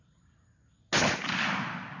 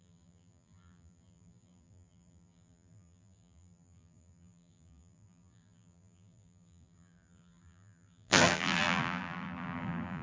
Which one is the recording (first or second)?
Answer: first